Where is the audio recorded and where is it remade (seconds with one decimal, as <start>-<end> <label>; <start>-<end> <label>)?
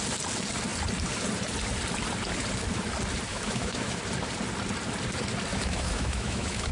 0.0-3.3 recorded; 3.3-4.0 remade; 4.0-5.5 recorded; 5.5-6.7 remade